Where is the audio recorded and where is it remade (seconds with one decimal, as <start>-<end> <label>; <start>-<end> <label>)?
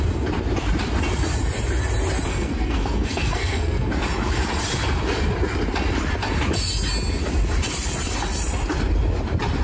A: 0.0-2.3 recorded; 2.3-3.9 remade; 3.9-9.6 recorded